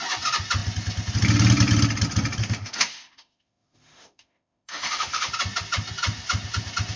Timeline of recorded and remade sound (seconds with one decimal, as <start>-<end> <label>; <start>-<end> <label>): 0.0-2.4 recorded; 2.4-5.3 remade; 5.3-7.0 recorded